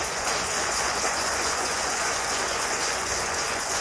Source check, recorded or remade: remade